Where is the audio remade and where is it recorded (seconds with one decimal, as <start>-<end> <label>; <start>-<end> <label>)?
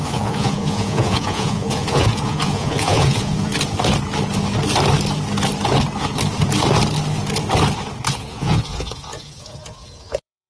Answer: 0.0-3.5 remade; 3.5-8.1 recorded; 8.1-10.5 remade